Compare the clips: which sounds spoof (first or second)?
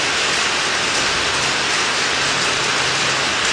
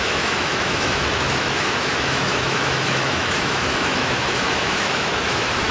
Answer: second